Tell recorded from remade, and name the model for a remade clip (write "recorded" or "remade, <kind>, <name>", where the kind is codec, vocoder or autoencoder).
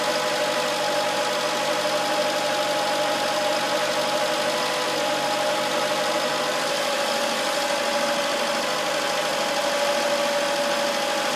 recorded